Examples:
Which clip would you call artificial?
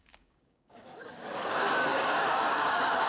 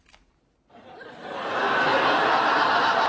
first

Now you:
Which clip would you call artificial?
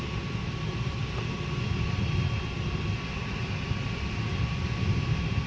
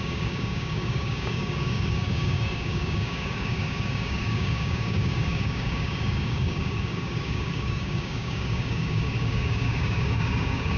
second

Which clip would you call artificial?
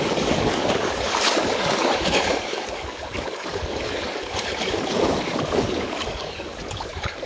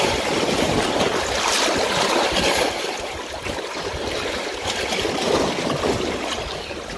first